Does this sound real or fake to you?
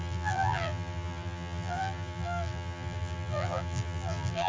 fake